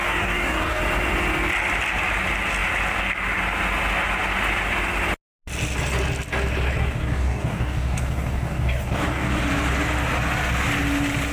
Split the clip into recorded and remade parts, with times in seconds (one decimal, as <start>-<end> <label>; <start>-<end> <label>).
0.0-0.8 remade; 0.8-6.8 recorded; 6.8-9.4 remade; 9.4-11.3 recorded